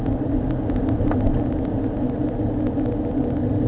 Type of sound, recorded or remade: recorded